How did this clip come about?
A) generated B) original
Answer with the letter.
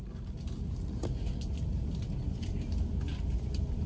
B